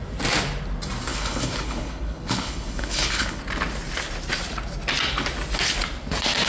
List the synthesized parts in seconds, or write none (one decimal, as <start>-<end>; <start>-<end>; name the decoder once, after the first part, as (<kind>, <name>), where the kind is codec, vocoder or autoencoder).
1.1-3.4 (codec, HILCodec)